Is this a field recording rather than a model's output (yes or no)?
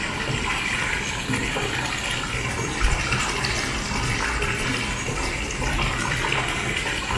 yes